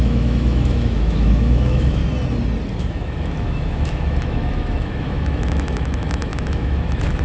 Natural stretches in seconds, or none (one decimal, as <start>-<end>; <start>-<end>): 2.0-2.9

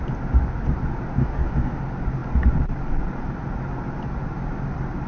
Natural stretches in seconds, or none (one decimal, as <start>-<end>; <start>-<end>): 0.0-1.2; 1.8-5.1

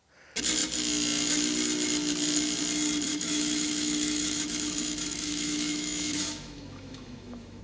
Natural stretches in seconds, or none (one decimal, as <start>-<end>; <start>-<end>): 0.0-3.1

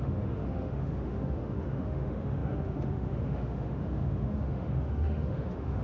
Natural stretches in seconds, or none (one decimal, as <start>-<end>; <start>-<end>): none

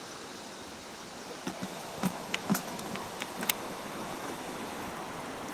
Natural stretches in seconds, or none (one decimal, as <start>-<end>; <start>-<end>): 0.0-1.6; 4.9-5.5